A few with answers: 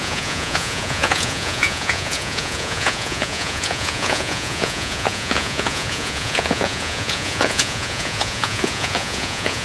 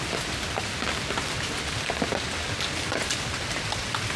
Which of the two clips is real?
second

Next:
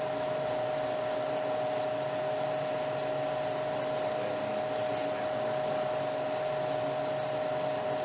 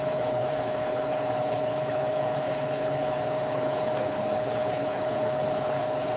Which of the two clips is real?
first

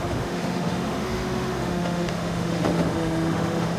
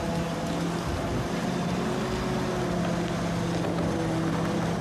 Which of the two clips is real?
second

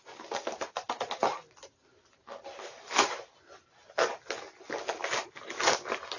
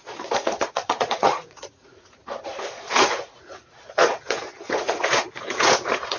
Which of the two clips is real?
first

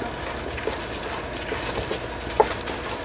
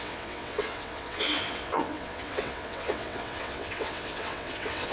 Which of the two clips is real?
first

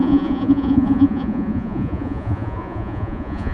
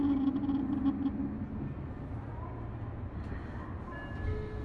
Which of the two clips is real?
second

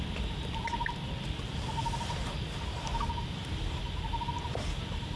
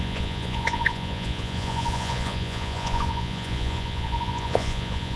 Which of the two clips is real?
first